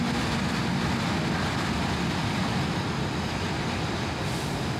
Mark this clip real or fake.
real